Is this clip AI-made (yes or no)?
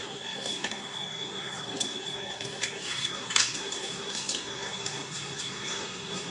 yes